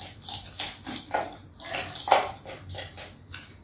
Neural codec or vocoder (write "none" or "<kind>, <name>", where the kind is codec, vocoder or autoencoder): none